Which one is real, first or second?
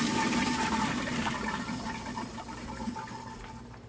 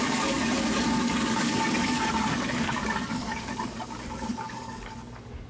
first